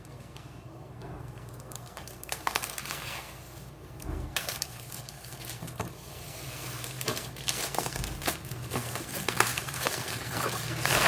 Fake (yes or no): yes